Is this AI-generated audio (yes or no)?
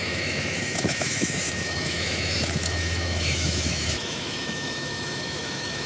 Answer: yes